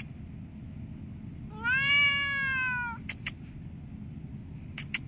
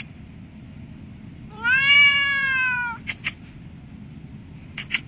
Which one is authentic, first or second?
first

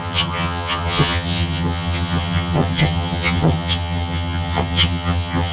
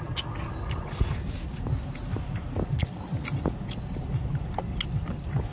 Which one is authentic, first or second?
second